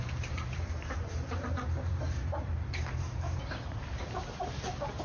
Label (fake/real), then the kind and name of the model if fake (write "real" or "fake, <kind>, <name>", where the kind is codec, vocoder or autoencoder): fake, vocoder, BigVGAN v2